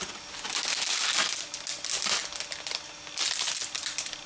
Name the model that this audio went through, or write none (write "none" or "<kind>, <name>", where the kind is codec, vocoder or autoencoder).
none